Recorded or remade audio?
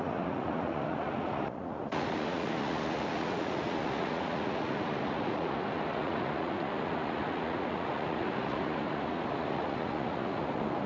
remade